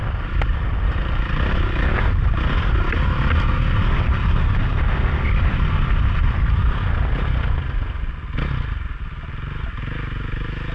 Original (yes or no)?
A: yes